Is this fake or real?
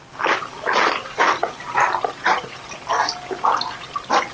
fake